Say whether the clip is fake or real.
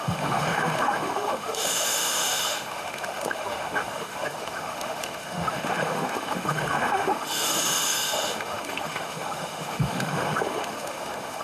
fake